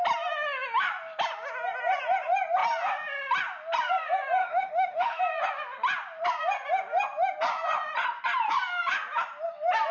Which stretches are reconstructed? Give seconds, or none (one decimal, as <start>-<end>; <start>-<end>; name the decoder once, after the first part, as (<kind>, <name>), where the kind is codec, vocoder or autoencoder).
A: 4.4-5.2 (autoencoder, DAC-VAE)